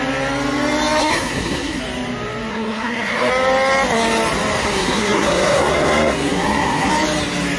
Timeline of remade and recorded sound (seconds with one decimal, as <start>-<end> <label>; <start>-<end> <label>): 0.0-1.0 recorded; 1.0-1.8 remade; 1.8-2.5 recorded; 2.5-3.3 remade; 3.3-4.6 recorded; 4.6-6.9 remade; 6.9-7.6 recorded